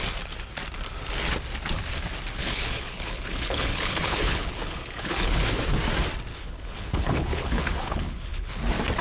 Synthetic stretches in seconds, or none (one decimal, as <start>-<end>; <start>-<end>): 2.4-5.5; 6.3-8.5